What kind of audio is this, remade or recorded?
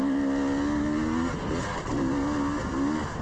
recorded